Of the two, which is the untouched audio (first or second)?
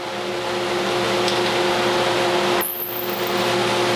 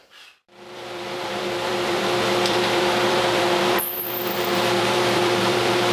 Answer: first